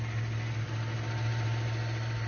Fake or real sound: real